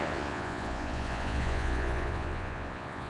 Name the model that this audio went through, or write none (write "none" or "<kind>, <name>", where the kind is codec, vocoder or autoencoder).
vocoder, Vocos